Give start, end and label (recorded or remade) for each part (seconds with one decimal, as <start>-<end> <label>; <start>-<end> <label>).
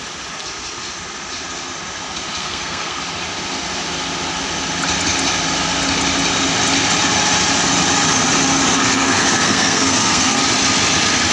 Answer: 0.0-2.4 recorded; 2.4-3.0 remade; 3.0-8.8 recorded; 8.8-10.4 remade; 10.4-11.3 recorded